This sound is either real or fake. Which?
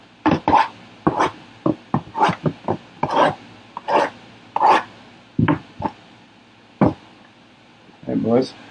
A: real